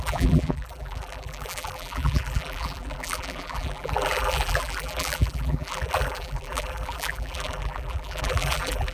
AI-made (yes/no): yes